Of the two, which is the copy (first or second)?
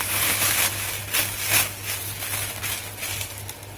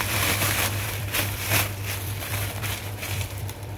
second